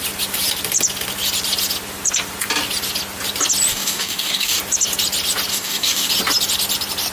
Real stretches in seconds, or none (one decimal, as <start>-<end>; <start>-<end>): 0.0-3.7; 4.6-5.5; 6.1-7.1